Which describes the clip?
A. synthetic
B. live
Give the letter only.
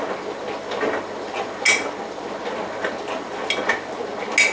B